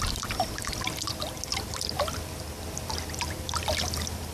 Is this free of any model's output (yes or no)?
yes